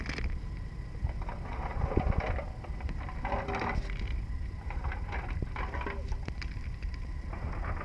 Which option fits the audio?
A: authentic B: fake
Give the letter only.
A